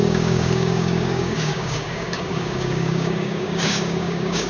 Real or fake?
fake